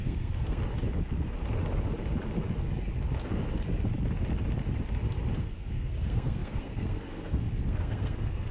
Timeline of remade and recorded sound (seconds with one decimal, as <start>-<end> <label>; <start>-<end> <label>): 0.0-0.6 remade; 0.6-5.4 recorded; 5.4-8.5 remade